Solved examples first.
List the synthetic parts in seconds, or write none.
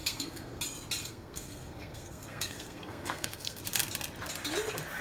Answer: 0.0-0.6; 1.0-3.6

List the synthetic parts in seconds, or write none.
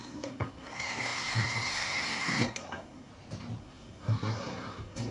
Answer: 0.0-3.1; 3.6-5.1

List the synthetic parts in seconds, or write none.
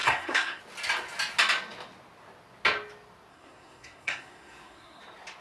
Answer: 0.0-0.6; 3.3-5.0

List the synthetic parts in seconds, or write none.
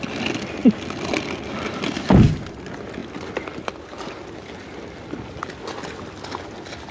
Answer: none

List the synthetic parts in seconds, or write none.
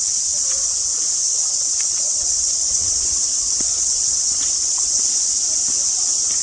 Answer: 1.2-5.0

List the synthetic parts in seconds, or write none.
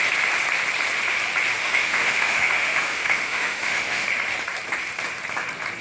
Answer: 1.6-4.1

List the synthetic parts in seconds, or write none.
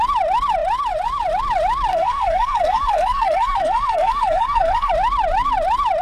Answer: 1.9-4.9